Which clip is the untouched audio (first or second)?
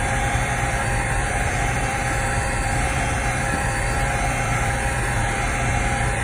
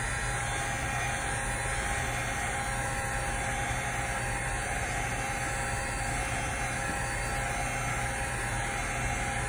second